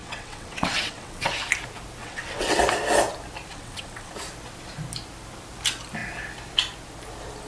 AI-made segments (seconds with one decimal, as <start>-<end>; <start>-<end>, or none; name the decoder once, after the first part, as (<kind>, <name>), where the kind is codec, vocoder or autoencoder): 0.0-1.3 (vocoder, WaveNeXt); 2.0-2.6; 3.5-4.1

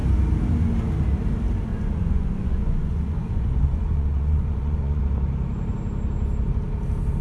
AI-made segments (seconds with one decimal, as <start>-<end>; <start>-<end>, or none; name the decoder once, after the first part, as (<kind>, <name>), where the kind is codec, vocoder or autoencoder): 1.7-5.0 (vocoder, Vocos)

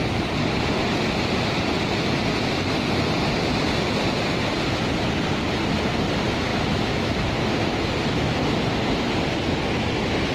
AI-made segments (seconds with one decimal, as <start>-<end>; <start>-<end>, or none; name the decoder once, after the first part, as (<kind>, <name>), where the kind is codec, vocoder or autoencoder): 6.5-7.1 (autoencoder, DAC-VAE)

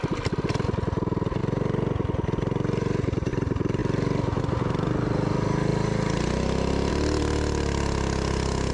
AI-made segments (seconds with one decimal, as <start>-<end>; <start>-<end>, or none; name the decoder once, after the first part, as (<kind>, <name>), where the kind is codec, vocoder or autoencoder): none

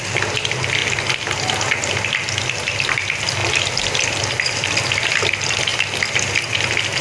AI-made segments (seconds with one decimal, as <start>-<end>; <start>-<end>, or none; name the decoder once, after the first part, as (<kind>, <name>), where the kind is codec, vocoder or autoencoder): 0.0-0.8 (vocoder, BigVGAN v2); 1.9-5.7; 6.6-7.0

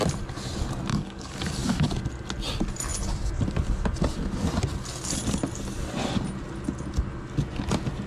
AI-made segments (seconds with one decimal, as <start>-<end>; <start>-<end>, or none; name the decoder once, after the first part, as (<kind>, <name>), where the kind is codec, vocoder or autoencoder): 0.9-1.9 (codec, DAC)

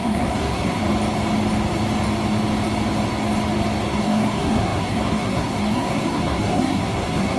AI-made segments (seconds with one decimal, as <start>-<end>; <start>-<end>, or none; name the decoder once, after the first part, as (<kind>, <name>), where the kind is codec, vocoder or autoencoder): 0.0-0.8 (codec, SNAC); 3.9-7.4

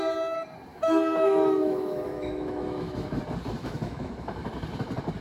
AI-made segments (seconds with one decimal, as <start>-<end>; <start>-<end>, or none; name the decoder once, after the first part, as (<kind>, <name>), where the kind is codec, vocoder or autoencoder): 0.7-3.2 (autoencoder, DAC-VAE); 3.6-4.4